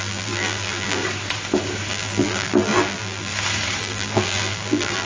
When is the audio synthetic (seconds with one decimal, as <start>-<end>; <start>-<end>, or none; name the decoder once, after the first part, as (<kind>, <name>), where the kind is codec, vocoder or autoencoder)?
0.0-1.0 (vocoder, BigVGAN v2); 1.9-3.3; 3.8-5.0